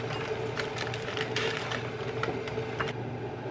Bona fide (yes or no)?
yes